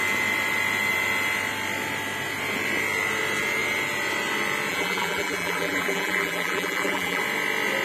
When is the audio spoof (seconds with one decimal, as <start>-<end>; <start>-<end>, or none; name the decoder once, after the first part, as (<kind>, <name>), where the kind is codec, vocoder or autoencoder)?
4.7-7.2 (vocoder, BigVGAN v2)